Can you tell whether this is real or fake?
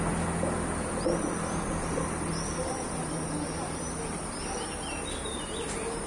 real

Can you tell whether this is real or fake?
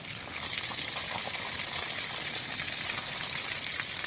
real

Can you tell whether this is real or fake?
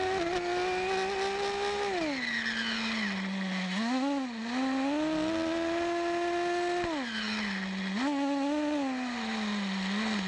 real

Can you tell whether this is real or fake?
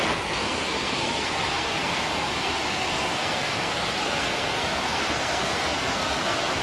fake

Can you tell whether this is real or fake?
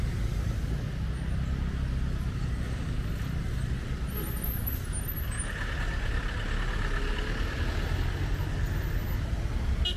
real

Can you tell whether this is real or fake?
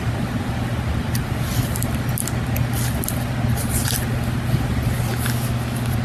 real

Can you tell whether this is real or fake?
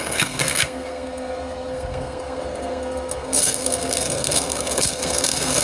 fake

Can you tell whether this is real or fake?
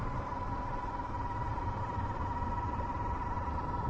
real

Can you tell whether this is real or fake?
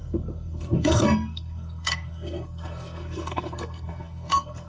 fake